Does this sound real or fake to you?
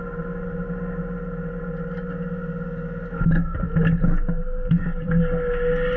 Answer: real